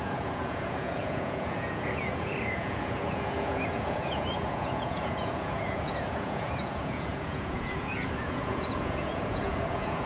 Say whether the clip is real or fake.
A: fake